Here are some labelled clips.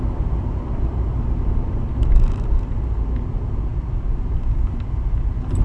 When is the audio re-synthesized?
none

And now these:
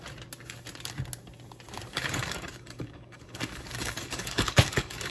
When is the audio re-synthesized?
1.9-5.1 (codec, DAC)

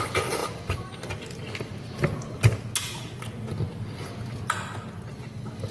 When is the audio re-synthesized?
0.4-1.1 (vocoder, BigVGAN v2)

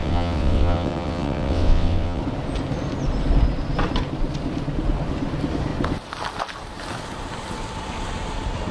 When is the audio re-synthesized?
0.0-2.2 (vocoder, WaveNeXt)

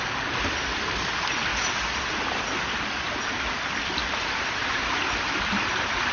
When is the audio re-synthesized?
none

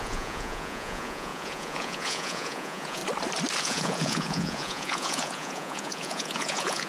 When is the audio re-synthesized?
0.0-3.0 (vocoder, Vocos); 3.6-6.9

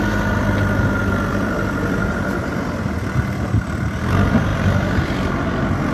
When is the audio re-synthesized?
1.0-4.1 (vocoder, BigVGAN v2); 4.5-5.3

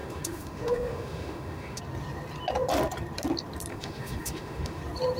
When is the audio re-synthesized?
0.0-1.8 (autoencoder, DAC-VAE); 3.7-4.8